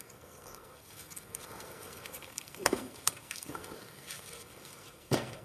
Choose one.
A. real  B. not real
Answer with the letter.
B